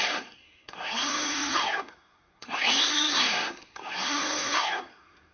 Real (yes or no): no